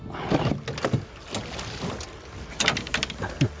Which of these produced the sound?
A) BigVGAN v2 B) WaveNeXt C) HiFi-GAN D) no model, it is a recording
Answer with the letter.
D